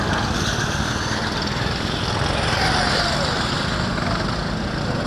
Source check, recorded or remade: recorded